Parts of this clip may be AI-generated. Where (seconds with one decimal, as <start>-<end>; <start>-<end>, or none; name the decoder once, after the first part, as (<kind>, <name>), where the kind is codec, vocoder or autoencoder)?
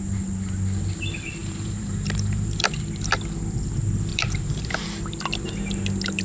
1.4-2.7 (vocoder, BigVGAN v2); 4.1-4.7